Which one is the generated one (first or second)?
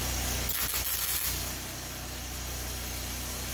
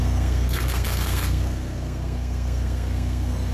second